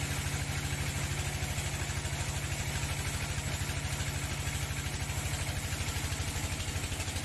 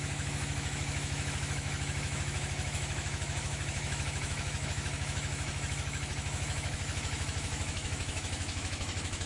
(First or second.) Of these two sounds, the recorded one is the first